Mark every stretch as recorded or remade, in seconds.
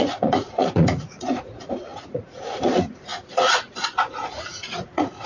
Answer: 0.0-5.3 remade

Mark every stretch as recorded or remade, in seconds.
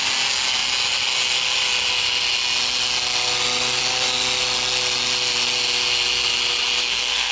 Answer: 0.0-6.8 recorded; 6.8-7.3 remade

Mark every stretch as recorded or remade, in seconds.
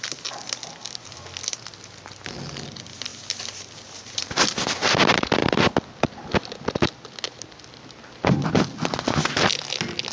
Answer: 0.0-10.1 recorded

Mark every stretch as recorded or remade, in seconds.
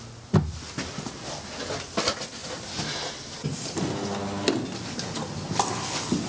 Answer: 0.0-6.3 recorded